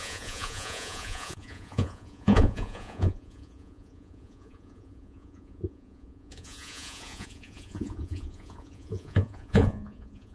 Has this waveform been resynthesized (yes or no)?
yes